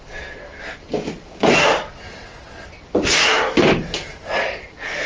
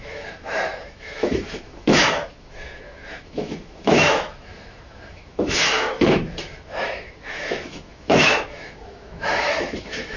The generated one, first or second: second